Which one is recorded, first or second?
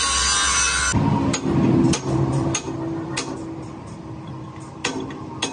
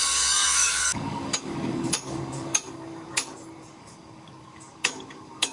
first